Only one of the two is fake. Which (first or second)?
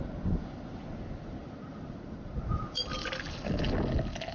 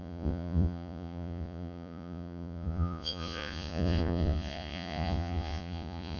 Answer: second